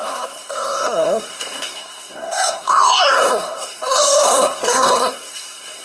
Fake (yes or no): yes